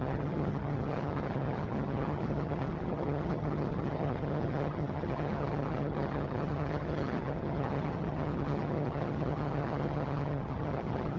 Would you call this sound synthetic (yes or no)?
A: yes